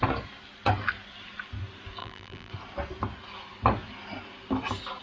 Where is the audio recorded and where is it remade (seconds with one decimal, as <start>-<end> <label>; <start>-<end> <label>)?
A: 0.0-2.0 recorded; 2.0-2.5 remade; 2.5-5.0 recorded